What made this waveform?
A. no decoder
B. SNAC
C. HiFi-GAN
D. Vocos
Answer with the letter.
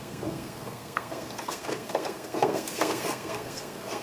B